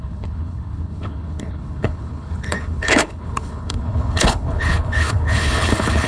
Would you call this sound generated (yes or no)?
yes